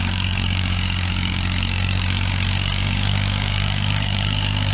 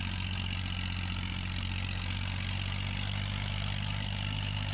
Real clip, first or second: second